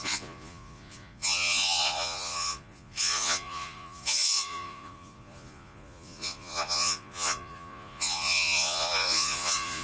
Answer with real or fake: fake